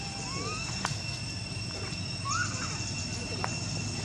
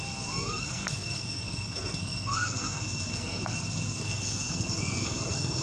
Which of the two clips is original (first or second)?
first